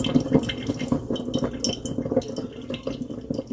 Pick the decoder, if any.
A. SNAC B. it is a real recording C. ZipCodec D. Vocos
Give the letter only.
B